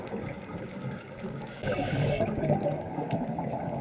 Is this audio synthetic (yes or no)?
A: yes